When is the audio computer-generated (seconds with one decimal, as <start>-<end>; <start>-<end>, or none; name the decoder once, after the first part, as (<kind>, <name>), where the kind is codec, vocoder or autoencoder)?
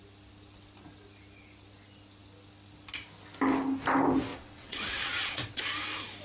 4.3-5.6 (vocoder, WaveNeXt)